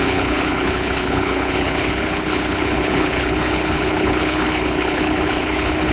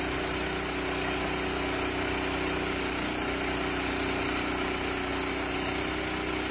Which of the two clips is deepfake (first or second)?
first